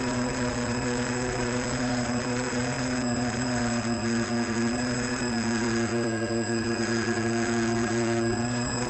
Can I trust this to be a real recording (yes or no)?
no